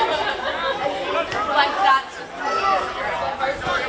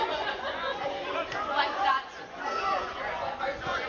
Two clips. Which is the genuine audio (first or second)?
first